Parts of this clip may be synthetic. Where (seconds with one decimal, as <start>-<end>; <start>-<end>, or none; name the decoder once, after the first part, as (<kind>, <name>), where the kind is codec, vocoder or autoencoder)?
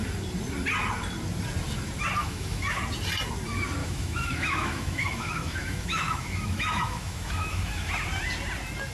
2.2-2.8 (autoencoder, DAC-VAE); 3.8-7.9